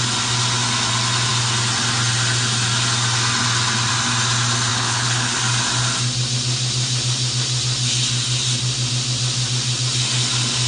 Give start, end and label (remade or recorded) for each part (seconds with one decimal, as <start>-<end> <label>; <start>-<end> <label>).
0.0-4.7 recorded; 4.7-5.4 remade; 5.4-10.7 recorded